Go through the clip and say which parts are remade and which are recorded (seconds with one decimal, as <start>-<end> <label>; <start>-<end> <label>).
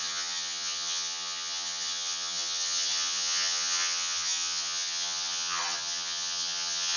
0.0-7.0 remade